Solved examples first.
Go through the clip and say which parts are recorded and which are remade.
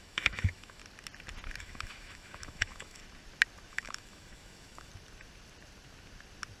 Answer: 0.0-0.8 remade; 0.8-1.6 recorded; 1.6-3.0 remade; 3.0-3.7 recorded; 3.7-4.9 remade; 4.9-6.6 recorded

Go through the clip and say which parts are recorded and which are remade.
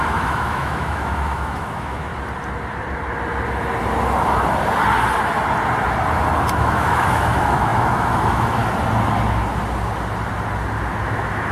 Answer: 0.0-2.1 remade; 2.1-6.6 recorded; 6.6-8.6 remade; 8.6-11.0 recorded; 11.0-11.5 remade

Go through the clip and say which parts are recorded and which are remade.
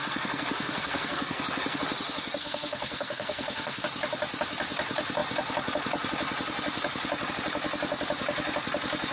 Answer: 0.0-1.8 remade; 1.8-2.4 recorded; 2.4-3.8 remade; 3.8-9.1 recorded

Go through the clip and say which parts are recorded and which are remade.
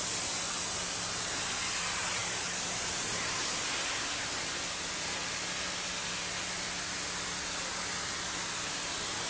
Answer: 0.0-9.3 recorded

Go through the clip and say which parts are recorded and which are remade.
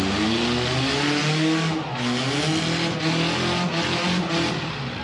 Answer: 0.0-5.0 recorded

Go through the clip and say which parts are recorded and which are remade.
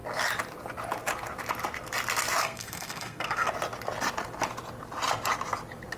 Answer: 0.0-2.4 recorded; 2.4-3.5 remade; 3.5-6.0 recorded